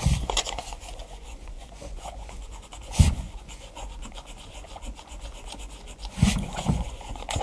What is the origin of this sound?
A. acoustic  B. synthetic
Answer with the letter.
B